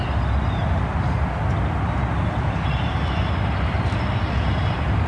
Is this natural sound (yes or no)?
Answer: yes